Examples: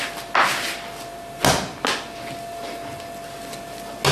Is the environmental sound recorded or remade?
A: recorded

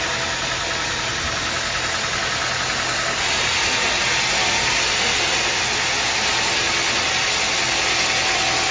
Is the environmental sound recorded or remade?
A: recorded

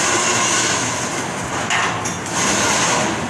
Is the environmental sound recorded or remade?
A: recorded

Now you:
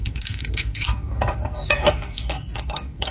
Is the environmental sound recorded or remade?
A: remade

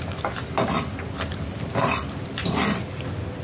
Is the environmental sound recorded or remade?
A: recorded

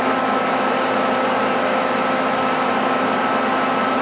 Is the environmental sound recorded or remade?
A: recorded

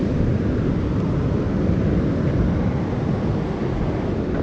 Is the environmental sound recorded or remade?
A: recorded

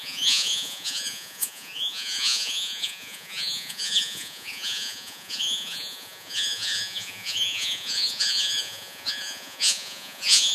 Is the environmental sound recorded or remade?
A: remade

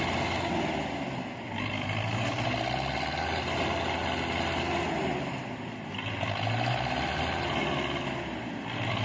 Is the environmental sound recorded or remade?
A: recorded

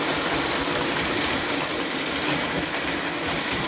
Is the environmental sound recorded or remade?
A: recorded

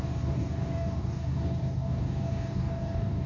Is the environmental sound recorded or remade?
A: remade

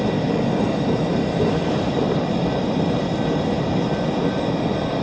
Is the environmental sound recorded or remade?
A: recorded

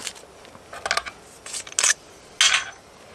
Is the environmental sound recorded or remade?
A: recorded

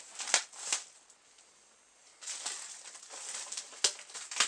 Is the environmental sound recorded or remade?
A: recorded